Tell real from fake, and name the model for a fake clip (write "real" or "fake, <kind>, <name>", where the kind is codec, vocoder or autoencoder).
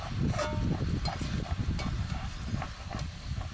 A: real